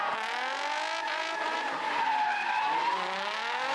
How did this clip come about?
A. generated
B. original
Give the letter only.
B